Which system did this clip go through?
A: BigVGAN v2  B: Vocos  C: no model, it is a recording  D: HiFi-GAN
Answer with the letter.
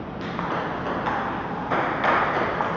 C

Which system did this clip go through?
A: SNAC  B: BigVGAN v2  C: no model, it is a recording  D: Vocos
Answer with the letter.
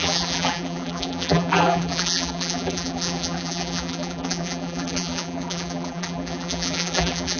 B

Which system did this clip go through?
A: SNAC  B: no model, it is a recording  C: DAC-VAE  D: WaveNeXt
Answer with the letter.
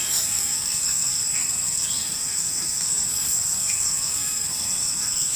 A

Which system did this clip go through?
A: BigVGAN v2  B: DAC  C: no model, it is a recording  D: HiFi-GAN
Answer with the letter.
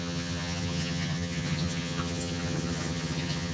D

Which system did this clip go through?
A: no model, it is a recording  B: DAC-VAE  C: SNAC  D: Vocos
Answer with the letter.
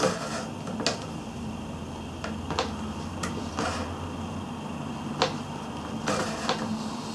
A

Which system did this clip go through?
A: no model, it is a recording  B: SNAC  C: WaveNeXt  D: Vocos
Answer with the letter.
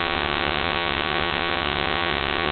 C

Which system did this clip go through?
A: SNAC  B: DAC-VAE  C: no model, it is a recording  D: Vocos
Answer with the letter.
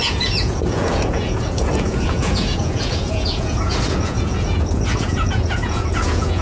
D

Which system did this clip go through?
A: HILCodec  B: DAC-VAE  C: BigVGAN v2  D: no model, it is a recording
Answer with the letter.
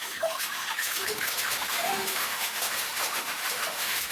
B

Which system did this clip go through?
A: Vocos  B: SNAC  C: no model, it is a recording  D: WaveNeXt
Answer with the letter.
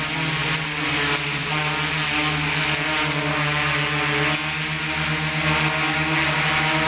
C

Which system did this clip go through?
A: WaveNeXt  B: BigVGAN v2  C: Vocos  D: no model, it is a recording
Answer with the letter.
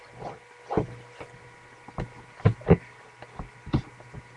D